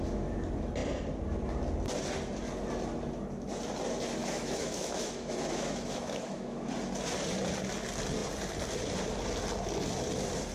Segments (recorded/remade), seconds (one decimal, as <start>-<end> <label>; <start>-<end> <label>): 0.0-4.2 recorded; 4.2-6.7 remade; 6.7-10.5 recorded